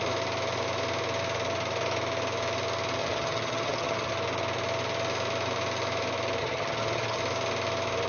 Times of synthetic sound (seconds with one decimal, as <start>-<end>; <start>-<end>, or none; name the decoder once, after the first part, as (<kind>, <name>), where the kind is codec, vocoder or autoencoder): 3.0-4.1 (vocoder, HiFi-GAN); 6.4-7.2

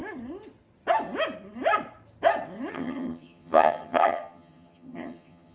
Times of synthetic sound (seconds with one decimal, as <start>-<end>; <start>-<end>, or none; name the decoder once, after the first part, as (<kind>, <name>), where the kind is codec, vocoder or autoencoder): 2.7-5.5 (vocoder, HiFi-GAN)

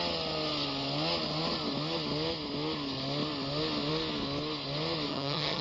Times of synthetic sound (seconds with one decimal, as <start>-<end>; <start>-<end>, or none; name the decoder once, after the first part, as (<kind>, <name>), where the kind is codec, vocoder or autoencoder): 5.1-5.6 (vocoder, HiFi-GAN)